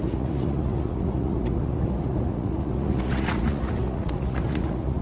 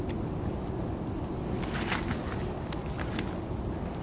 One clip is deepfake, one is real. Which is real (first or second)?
second